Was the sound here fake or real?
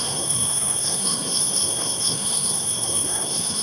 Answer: fake